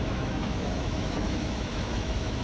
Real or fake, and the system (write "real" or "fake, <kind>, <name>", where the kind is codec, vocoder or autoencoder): fake, autoencoder, DAC-VAE